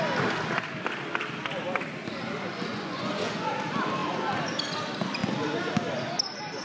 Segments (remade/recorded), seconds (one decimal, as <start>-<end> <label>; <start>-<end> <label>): 0.0-2.7 recorded; 2.7-3.5 remade; 3.5-6.6 recorded

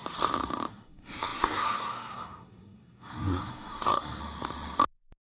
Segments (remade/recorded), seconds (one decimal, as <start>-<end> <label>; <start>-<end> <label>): 0.0-0.7 recorded; 0.7-4.2 remade; 4.2-5.2 recorded

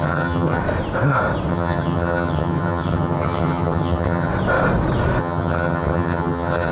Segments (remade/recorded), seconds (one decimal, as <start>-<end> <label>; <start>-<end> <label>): 0.0-0.6 remade; 0.6-1.5 recorded; 1.5-4.3 remade; 4.3-5.2 recorded; 5.2-6.7 remade

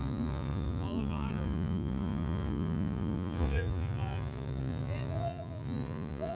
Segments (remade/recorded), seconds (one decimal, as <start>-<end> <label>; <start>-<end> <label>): 0.0-6.4 remade

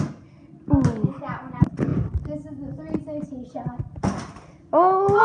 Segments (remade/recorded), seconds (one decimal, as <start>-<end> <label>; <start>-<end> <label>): 0.0-5.2 recorded

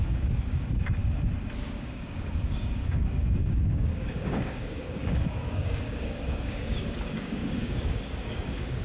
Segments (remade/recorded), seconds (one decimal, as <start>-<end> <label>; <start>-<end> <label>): 0.0-1.0 remade; 1.0-1.6 recorded; 1.6-8.8 remade